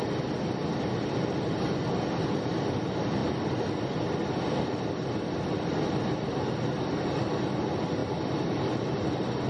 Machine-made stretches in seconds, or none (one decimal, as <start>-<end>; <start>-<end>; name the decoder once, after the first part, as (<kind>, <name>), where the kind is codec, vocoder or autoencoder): none